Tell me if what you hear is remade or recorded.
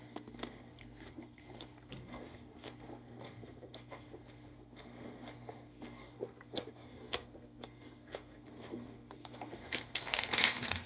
remade